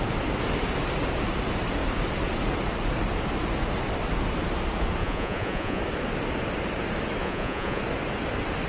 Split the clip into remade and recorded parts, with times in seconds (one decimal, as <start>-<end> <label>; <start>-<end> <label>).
0.0-5.0 recorded; 5.0-5.8 remade; 5.8-7.2 recorded; 7.2-7.8 remade; 7.8-8.7 recorded